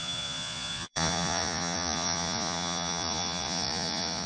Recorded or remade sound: remade